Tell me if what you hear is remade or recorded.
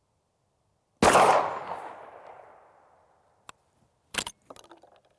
recorded